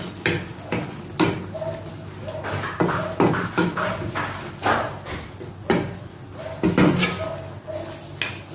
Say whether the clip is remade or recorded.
recorded